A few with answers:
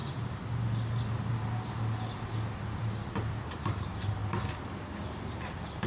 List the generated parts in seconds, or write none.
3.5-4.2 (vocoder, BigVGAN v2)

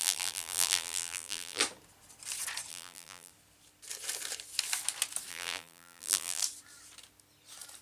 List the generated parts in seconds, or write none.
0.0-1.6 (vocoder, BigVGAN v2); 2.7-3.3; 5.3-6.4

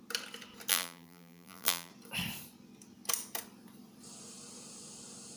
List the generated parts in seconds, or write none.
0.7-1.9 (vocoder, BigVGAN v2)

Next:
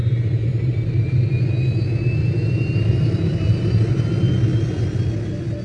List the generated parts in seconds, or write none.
0.0-1.3 (vocoder, BigVGAN v2); 2.2-4.0

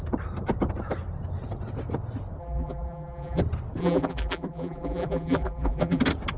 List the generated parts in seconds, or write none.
2.4-3.4 (vocoder, BigVGAN v2); 3.8-6.0